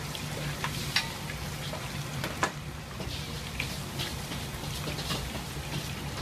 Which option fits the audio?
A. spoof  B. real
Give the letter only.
B